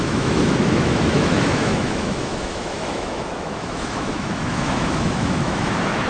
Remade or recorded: remade